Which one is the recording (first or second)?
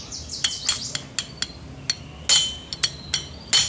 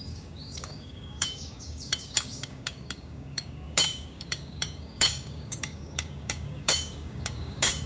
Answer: first